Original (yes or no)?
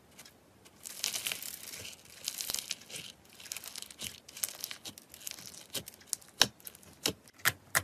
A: yes